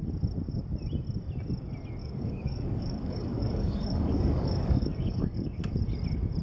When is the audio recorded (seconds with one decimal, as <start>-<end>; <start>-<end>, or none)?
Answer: 0.0-2.0; 5.8-6.4